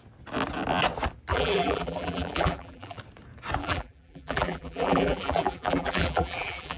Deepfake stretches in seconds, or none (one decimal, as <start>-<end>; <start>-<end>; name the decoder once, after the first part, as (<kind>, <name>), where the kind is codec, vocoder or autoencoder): 1.3-3.0 (vocoder, BigVGAN v2); 3.6-6.8